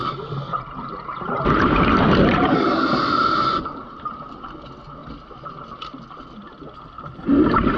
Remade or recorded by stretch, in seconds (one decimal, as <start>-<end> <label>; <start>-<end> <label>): 0.0-4.4 remade; 4.4-7.8 recorded